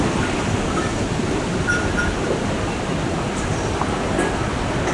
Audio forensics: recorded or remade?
recorded